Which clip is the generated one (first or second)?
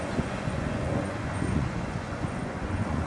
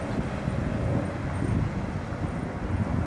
first